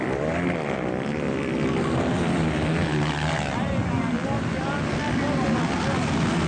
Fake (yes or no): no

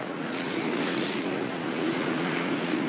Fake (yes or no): yes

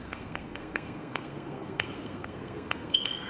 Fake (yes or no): yes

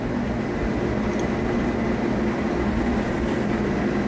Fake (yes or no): no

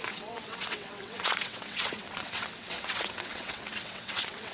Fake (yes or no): yes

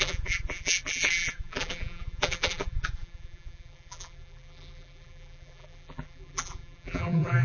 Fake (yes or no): yes